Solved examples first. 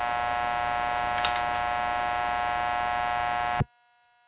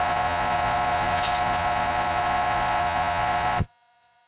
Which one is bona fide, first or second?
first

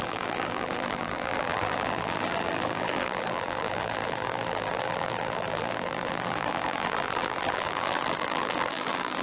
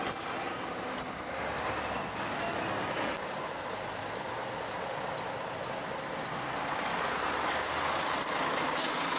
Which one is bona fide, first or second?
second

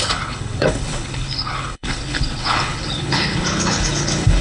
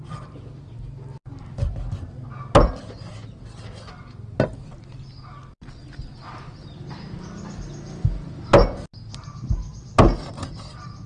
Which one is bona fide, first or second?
second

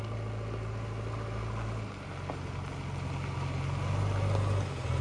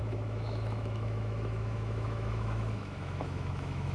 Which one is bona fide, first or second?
first